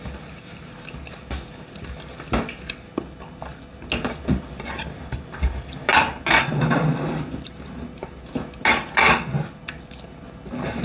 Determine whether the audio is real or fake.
real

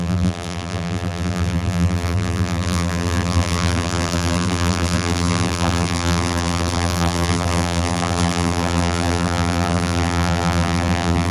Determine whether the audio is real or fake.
fake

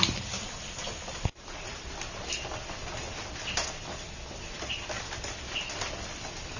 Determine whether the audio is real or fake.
real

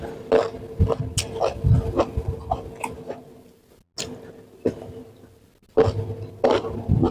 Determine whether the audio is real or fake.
real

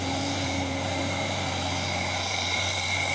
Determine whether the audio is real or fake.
fake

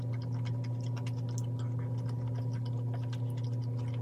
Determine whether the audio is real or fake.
real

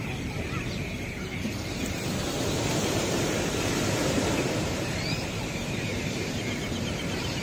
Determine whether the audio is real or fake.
fake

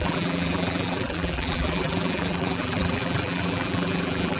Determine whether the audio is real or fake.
fake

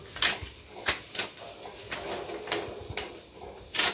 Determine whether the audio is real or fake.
real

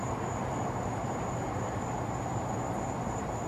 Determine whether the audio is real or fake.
fake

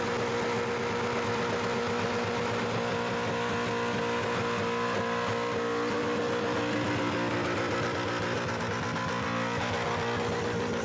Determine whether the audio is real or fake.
real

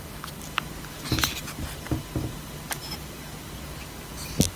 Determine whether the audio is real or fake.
real